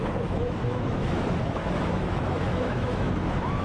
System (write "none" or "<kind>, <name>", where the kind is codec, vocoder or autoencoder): autoencoder, DAC-VAE